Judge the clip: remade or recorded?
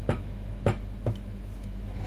remade